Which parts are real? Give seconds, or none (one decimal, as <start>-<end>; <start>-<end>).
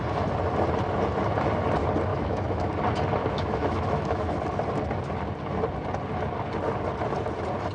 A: 0.0-2.1; 2.7-3.2; 4.4-7.7